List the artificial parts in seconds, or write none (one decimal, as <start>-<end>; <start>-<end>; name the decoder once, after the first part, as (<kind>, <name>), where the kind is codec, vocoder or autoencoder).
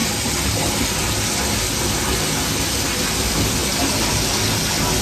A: none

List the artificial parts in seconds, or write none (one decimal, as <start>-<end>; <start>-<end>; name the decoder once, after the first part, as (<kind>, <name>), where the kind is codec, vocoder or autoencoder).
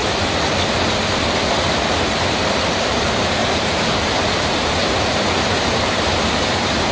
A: 2.6-6.9 (vocoder, BigVGAN v2)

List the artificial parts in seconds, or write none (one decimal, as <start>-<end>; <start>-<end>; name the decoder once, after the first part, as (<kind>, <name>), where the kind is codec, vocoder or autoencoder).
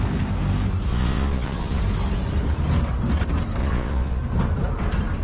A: 0.9-1.8 (vocoder, Vocos); 3.6-4.2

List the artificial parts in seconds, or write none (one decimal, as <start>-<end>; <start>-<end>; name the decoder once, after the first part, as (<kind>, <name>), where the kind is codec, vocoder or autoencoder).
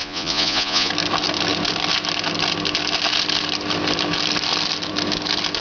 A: 0.0-0.9 (vocoder, Vocos)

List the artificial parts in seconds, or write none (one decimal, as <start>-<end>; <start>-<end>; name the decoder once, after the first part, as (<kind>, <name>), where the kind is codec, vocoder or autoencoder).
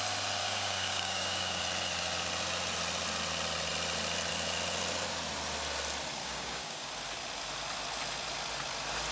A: 0.4-1.6 (codec, DAC); 6.2-6.9